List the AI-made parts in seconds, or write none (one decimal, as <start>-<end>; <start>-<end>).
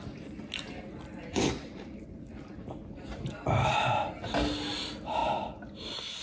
none